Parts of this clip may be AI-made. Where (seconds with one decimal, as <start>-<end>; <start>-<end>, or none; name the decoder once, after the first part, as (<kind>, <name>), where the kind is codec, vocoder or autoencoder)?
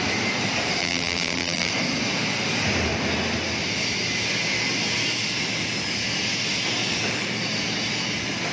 0.8-1.7 (vocoder, BigVGAN v2)